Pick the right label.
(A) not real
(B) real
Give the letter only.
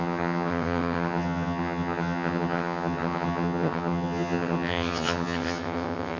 A